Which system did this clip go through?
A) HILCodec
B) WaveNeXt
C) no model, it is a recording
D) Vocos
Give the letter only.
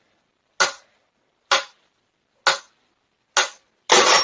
C